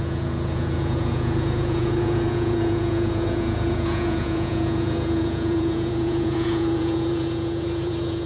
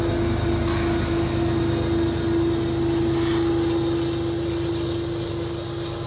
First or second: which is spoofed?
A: first